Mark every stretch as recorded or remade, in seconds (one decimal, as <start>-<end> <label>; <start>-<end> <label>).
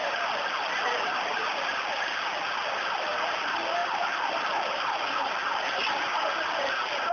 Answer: 0.0-1.4 remade; 1.4-3.8 recorded; 3.8-6.0 remade; 6.0-7.1 recorded